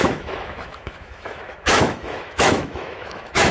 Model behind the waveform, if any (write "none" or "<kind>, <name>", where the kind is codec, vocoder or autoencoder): autoencoder, DAC-VAE